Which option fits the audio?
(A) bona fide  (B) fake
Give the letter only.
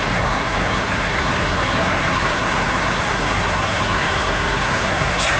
B